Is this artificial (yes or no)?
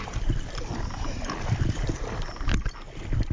no